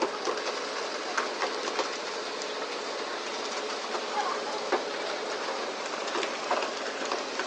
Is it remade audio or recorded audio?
recorded